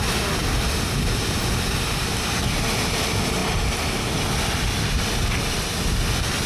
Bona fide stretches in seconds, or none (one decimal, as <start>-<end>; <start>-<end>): 0.0-6.5